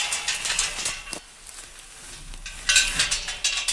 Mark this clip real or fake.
real